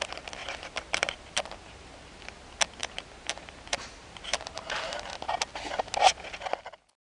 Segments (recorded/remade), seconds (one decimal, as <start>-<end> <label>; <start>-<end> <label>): 0.0-0.4 recorded; 0.4-2.2 remade; 2.2-2.8 recorded; 2.8-5.1 remade; 5.1-7.1 recorded